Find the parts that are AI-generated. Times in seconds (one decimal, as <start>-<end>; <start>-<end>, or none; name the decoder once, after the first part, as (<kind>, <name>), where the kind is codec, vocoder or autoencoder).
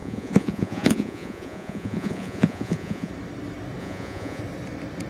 0.0-3.1 (vocoder, Vocos); 3.8-4.4